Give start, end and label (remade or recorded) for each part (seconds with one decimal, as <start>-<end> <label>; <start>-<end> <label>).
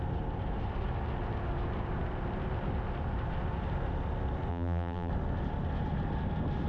0.0-4.5 recorded; 4.5-5.1 remade; 5.1-6.7 recorded